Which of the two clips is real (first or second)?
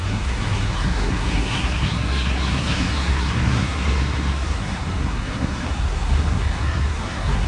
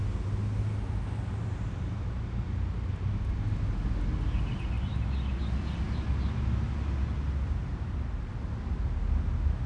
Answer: second